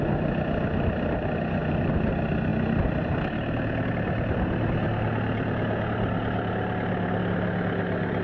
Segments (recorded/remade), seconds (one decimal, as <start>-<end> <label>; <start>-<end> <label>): 0.0-1.6 recorded; 1.6-2.1 remade; 2.1-8.2 recorded